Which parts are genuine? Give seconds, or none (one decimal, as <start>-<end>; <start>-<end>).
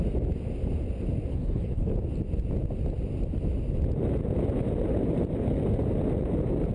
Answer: 0.0-1.3; 1.9-6.7